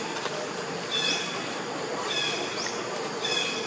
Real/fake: real